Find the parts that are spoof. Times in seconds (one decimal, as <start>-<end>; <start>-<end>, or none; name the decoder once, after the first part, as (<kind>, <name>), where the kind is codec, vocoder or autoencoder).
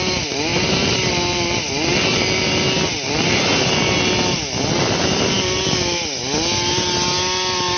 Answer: none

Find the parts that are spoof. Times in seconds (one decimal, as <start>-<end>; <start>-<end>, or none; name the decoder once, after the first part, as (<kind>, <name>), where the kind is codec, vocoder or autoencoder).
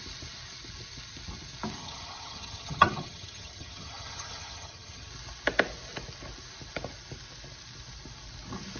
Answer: 1.8-5.1 (vocoder, HiFi-GAN)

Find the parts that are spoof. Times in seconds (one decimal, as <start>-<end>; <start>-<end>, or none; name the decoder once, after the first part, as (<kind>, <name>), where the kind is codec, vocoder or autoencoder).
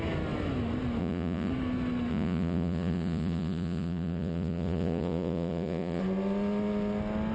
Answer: 1.0-1.5 (vocoder, Vocos); 2.1-6.0